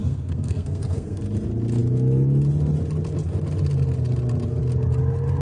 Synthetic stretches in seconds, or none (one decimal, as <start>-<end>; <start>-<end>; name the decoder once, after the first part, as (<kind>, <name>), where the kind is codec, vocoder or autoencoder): 0.0-1.2 (codec, SNAC)